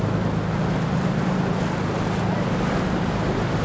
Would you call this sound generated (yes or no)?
no